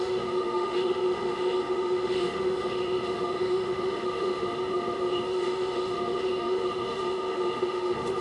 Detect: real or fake fake